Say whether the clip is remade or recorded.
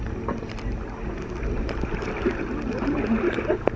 recorded